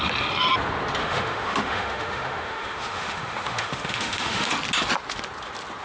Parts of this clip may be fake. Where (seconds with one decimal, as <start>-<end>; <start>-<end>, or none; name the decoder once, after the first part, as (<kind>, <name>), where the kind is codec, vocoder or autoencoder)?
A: 1.0-4.5 (autoencoder, DAC-VAE)